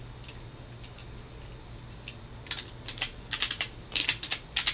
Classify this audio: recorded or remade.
recorded